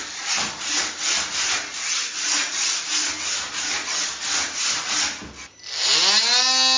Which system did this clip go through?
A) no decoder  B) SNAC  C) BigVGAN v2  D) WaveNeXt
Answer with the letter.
A